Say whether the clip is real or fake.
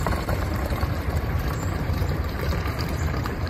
fake